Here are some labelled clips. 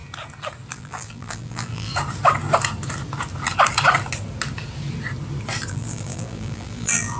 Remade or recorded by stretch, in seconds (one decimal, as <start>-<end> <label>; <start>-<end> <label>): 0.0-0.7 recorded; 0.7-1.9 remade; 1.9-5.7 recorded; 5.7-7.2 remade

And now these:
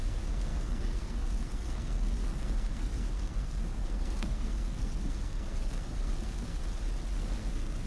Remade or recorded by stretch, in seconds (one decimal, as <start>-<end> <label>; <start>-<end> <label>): 0.0-6.6 remade; 6.6-7.2 recorded; 7.2-7.9 remade

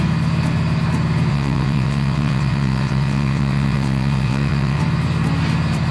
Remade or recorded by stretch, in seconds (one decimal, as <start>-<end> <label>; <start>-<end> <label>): 0.0-1.3 recorded; 1.3-4.8 remade; 4.8-5.9 recorded

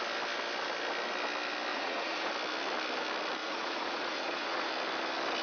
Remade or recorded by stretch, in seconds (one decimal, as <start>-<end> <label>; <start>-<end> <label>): 0.0-1.7 recorded; 1.7-2.3 remade; 2.3-3.4 recorded; 3.4-4.7 remade; 4.7-5.4 recorded

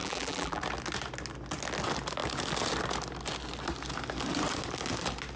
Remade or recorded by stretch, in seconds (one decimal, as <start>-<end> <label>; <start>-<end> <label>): 0.0-0.6 remade; 0.6-5.4 recorded